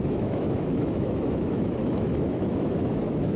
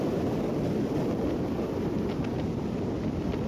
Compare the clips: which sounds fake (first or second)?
first